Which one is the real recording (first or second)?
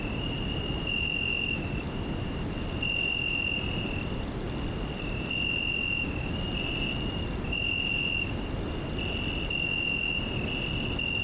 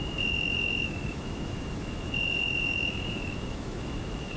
first